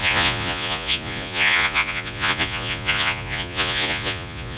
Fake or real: fake